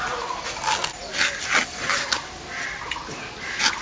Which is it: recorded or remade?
recorded